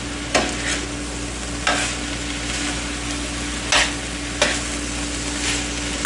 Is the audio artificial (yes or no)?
no